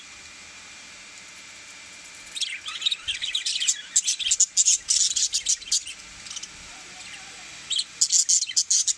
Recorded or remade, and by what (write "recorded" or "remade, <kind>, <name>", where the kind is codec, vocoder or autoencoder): recorded